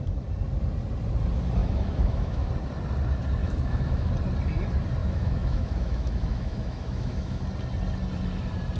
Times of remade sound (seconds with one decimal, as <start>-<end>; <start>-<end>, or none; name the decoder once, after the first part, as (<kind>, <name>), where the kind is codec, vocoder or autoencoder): 1.6-2.5 (autoencoder, DAC-VAE); 3.4-4.1; 5.0-7.4